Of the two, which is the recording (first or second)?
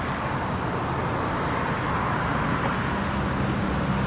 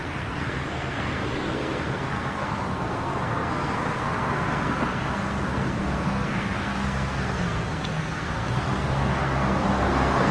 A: first